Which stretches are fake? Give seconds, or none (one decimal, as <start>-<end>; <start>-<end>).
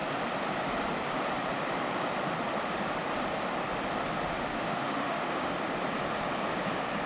4.5-5.5